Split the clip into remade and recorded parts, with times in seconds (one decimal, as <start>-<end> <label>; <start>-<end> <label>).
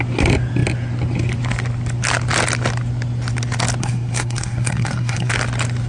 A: 0.0-3.8 recorded; 3.8-5.3 remade; 5.3-5.9 recorded